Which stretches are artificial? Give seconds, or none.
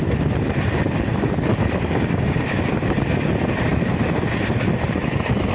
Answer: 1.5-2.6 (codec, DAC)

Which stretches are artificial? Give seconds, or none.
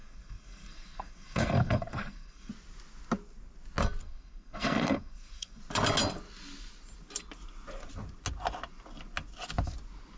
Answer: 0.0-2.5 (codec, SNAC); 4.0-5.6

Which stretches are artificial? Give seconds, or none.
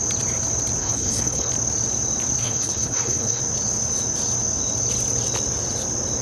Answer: 0.8-1.5 (codec, HILCodec); 2.4-3.4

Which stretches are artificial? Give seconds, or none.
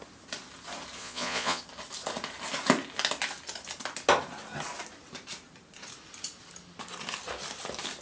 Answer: 1.0-1.6 (vocoder, Vocos)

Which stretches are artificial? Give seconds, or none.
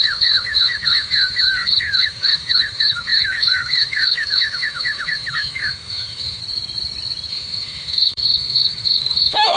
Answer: 0.0-6.4 (autoencoder, DAC-VAE); 7.3-9.6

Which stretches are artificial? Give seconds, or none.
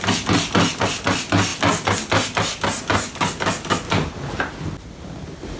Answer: none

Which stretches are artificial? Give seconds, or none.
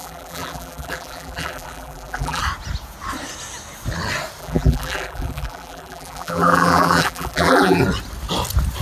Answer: 0.0-2.4 (vocoder, BigVGAN v2); 4.4-7.8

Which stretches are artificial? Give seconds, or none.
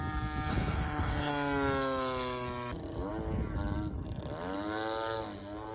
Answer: 0.5-1.3 (codec, HILCodec)